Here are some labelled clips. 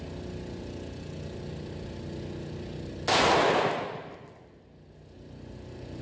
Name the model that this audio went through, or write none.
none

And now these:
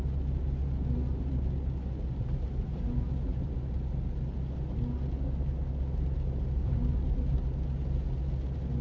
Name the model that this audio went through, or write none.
none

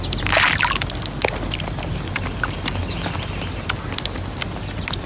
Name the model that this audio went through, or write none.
none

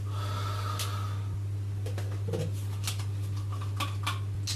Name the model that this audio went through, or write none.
none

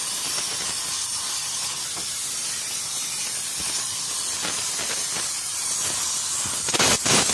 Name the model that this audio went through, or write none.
none